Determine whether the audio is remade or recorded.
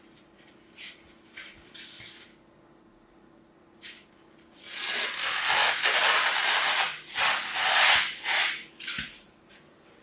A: recorded